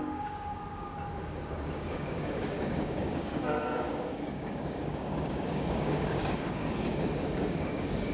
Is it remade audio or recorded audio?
remade